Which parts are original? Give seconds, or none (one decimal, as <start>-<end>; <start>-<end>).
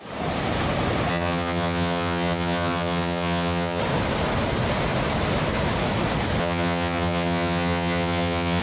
0.0-1.1; 3.8-6.4